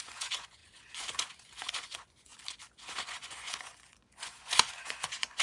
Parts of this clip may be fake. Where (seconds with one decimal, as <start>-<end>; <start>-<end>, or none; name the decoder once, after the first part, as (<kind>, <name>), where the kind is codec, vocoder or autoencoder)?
0.0-2.3 (vocoder, Vocos); 2.8-5.4